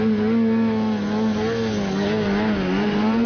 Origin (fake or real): real